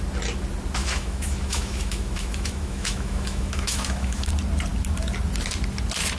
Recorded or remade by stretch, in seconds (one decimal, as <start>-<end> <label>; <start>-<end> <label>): 0.0-0.8 recorded; 0.8-4.3 remade; 4.3-6.2 recorded